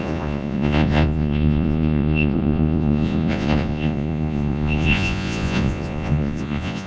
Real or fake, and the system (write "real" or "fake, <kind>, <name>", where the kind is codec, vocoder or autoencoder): fake, vocoder, Vocos